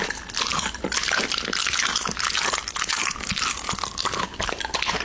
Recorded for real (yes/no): yes